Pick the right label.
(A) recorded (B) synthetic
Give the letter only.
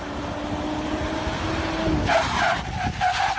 A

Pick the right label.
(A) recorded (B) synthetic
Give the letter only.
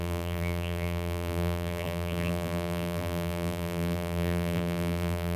B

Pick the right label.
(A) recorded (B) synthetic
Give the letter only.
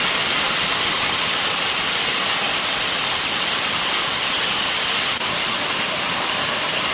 A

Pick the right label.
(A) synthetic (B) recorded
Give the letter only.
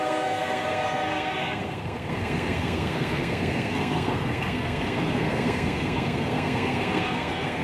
A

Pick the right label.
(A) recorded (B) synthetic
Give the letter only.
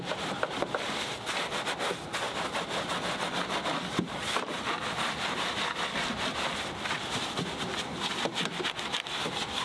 A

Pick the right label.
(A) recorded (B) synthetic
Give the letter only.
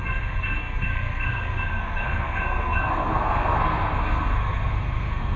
B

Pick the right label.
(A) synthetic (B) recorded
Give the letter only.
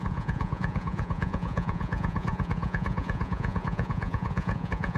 A